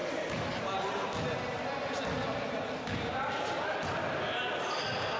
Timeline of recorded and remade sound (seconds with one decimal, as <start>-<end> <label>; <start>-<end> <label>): 0.0-5.2 recorded